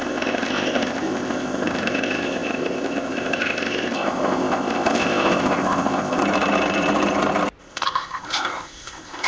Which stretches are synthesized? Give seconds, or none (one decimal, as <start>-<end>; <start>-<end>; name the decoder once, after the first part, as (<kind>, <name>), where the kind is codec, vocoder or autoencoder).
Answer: 0.0-6.2 (codec, ZipCodec); 7.6-9.3

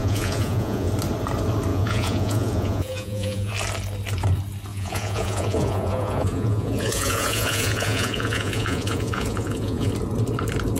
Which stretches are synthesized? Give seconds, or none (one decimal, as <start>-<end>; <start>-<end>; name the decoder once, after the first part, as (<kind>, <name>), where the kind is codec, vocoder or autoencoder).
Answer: 0.0-0.9 (vocoder, Vocos); 1.7-3.5; 4.7-9.9

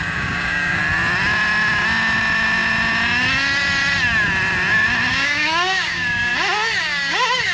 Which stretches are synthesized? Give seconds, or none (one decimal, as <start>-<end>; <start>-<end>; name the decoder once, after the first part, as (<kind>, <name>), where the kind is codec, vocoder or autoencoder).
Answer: 0.0-0.8 (codec, DAC); 5.1-6.3; 6.8-7.5

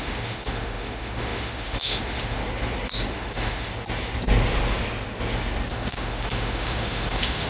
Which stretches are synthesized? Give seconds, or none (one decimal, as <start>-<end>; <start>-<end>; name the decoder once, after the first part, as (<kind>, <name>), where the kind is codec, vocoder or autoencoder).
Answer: 0.0-2.4 (autoencoder, DAC-VAE); 3.1-3.7; 5.7-7.5

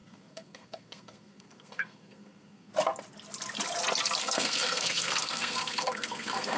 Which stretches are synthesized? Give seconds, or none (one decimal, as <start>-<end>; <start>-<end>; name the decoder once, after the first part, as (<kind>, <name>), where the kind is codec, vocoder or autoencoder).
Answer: 0.0-2.7 (codec, SNAC); 4.2-6.6